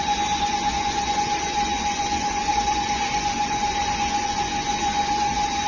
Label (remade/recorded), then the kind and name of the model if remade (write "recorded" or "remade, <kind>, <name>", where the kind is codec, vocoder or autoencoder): remade, vocoder, Vocos